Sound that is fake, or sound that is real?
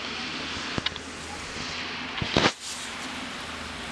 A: real